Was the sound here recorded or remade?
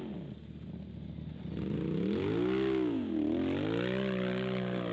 recorded